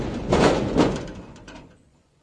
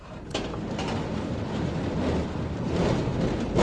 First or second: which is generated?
first